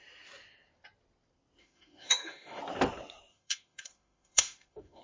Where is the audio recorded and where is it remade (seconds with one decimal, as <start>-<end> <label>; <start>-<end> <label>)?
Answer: 0.0-1.6 recorded; 1.6-2.6 remade; 2.6-3.3 recorded; 3.3-5.0 remade